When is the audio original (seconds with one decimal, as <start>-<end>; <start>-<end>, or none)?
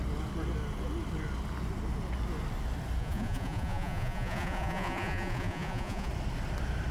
0.0-3.0; 6.1-6.9